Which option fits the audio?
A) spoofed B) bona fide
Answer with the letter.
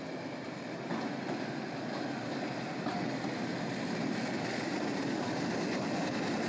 B